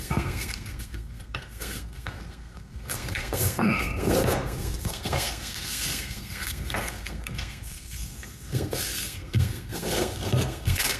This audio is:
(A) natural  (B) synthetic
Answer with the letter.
B